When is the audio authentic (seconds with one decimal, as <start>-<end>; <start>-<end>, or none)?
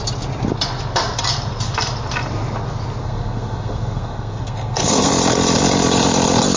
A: 0.0-3.0; 5.1-6.6